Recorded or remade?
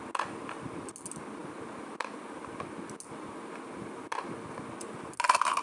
recorded